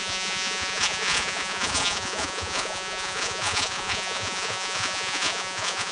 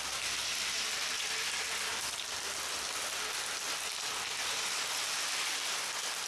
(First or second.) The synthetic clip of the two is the first